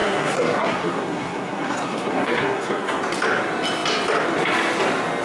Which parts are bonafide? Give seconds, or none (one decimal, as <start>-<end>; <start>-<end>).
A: 3.0-5.2

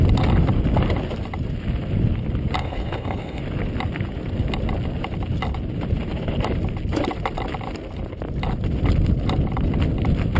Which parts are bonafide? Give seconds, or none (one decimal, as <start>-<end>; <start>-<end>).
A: 0.0-2.6; 3.4-10.4

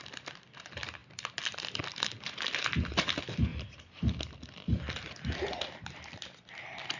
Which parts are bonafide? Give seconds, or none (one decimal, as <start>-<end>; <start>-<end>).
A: 0.0-7.0

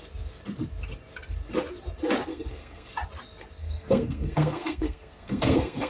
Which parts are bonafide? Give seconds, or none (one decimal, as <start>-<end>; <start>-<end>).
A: 0.0-2.3; 2.9-3.6

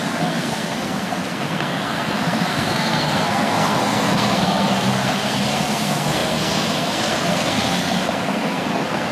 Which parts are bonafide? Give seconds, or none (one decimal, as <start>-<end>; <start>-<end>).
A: none

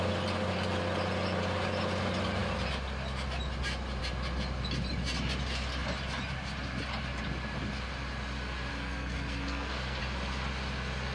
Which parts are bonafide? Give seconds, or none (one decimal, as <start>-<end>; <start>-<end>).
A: 0.0-8.7; 10.0-11.1

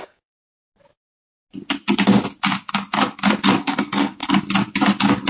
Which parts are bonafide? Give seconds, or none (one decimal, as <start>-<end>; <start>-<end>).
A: 0.4-3.6; 4.2-5.3

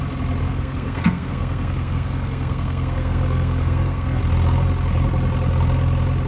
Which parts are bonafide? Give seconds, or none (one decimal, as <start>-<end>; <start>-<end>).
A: 0.0-0.4; 4.2-6.3